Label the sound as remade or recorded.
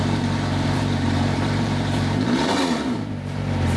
remade